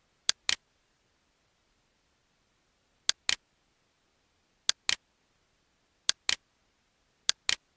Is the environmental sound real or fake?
real